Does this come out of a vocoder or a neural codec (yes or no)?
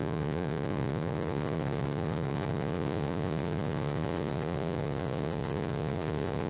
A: yes